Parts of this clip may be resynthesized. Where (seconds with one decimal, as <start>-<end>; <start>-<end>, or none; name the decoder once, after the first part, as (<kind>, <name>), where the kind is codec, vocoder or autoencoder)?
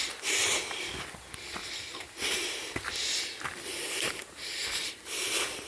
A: 1.6-2.7 (vocoder, BigVGAN v2); 3.7-4.6